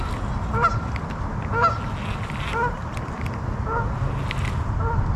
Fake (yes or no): no